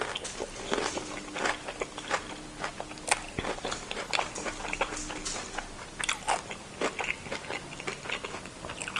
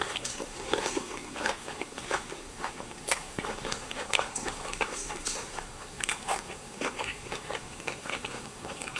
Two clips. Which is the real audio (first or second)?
first